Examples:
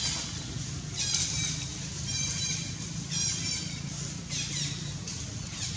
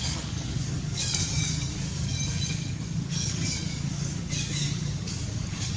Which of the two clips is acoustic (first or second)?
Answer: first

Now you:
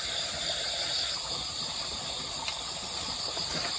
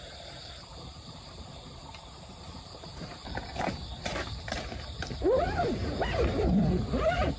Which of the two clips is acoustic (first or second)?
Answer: first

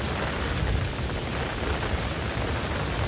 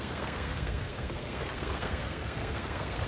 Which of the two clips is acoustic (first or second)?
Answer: first